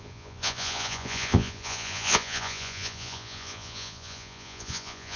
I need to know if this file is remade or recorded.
remade